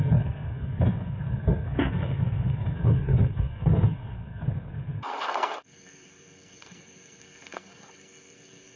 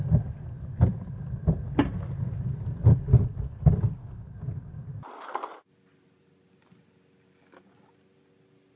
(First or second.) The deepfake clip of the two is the first